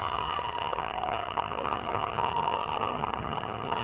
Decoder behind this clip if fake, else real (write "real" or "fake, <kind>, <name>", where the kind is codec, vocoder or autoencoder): fake, vocoder, HiFi-GAN